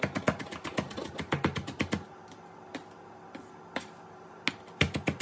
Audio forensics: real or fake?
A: real